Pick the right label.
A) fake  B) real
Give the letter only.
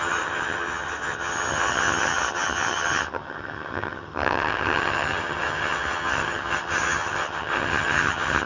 A